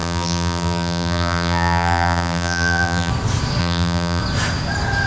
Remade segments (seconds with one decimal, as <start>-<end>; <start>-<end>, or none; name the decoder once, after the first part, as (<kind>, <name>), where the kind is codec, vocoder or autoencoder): 0.0-3.1 (vocoder, BigVGAN v2); 3.6-4.2

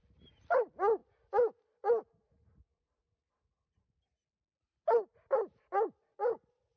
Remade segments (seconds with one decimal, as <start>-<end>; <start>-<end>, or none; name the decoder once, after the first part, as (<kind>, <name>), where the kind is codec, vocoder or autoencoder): none

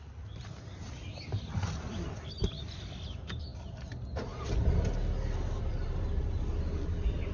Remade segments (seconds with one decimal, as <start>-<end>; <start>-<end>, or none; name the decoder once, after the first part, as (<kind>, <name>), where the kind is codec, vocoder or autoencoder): none

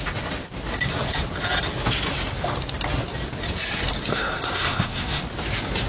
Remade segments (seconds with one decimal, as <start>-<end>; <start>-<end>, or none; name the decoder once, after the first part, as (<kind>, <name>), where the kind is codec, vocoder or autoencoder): 4.1-5.2 (codec, SNAC)